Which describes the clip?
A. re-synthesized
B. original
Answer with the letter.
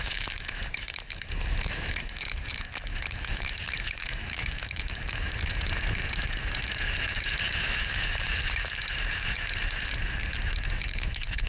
A